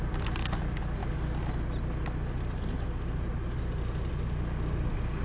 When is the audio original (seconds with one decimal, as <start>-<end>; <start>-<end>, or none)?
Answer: 0.0-5.2